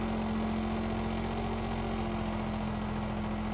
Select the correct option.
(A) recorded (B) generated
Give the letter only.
A